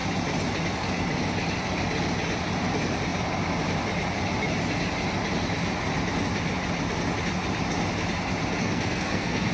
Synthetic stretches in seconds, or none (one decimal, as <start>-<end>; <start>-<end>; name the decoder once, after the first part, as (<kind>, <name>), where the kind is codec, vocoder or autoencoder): 8.6-9.5 (codec, SNAC)